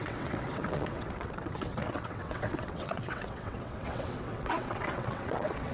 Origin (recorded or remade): remade